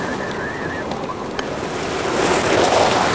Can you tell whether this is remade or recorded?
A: recorded